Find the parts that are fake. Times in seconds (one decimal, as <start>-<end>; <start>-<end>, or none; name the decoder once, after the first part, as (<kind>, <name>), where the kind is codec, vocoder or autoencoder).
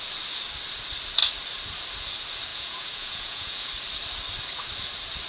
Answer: 2.5-3.7 (vocoder, Vocos)